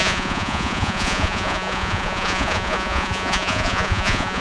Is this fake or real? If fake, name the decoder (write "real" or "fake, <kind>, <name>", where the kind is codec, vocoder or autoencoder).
fake, vocoder, Vocos